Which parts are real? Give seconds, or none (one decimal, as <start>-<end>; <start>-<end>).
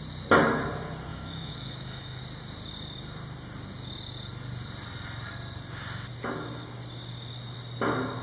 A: 0.0-1.1; 2.2-8.2